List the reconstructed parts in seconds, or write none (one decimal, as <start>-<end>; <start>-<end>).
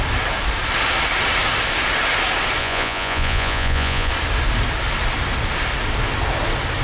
2.6-4.1